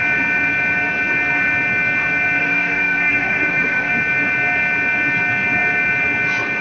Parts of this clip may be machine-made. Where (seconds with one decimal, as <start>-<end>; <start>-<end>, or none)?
2.4-3.9